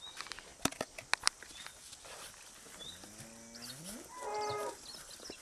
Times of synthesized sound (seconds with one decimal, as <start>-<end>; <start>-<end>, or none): none